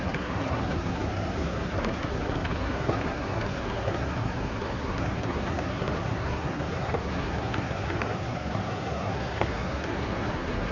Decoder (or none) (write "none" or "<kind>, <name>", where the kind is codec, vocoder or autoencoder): codec, SNAC